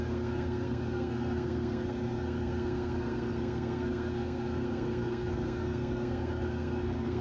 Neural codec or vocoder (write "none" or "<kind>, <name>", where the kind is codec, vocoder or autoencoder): codec, SNAC